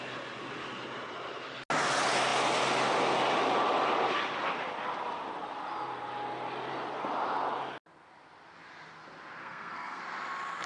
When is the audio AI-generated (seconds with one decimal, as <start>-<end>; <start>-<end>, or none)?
9.4-10.0

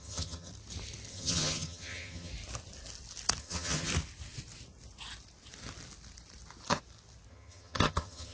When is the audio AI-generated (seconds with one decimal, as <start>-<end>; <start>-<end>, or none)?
0.0-0.5; 1.1-2.3; 3.4-3.9; 7.3-8.3

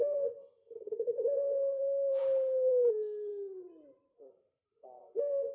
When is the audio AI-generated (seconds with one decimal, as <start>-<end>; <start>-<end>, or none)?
0.0-2.2; 2.7-3.3; 4.3-5.5

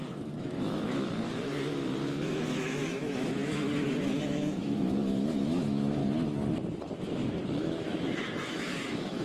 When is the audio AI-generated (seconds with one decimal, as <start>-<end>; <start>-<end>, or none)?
0.0-6.0; 7.6-9.2

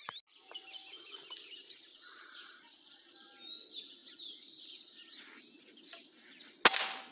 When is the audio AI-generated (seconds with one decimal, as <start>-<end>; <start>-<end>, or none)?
1.9-3.1

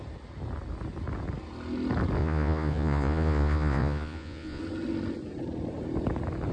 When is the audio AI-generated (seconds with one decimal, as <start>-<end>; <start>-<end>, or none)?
2.2-4.6

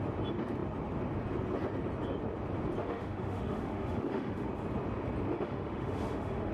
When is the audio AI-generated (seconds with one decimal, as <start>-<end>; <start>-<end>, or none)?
2.8-4.5; 5.3-6.5